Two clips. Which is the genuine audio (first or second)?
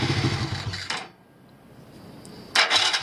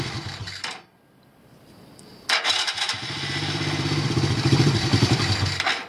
first